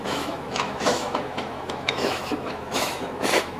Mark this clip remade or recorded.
remade